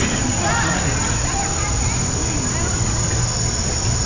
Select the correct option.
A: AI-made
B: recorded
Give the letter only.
B